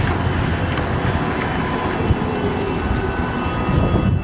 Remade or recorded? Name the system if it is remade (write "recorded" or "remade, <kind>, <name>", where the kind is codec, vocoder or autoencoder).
recorded